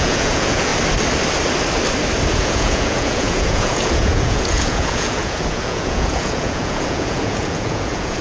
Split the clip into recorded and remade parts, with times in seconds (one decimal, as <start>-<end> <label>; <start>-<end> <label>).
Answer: 0.0-0.7 remade; 0.7-2.3 recorded; 2.3-8.2 remade